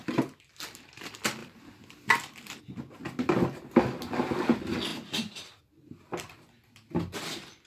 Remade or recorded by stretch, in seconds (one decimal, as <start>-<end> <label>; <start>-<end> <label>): 0.0-7.7 recorded